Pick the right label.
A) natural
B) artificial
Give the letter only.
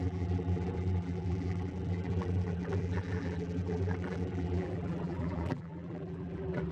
B